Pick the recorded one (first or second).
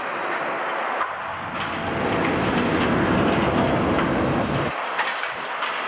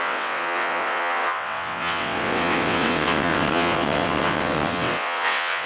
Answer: first